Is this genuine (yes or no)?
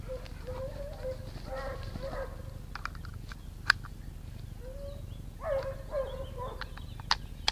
yes